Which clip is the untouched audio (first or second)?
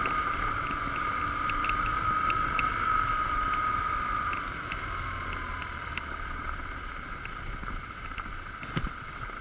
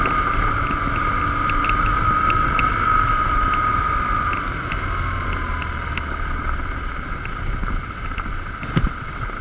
second